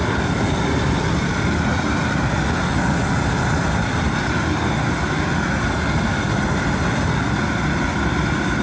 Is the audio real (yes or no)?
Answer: yes